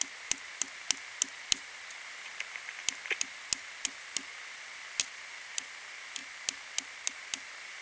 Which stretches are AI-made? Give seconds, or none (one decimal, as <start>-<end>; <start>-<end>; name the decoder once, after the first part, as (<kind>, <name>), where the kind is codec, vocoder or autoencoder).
none